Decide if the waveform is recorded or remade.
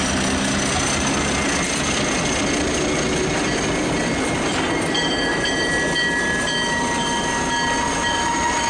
recorded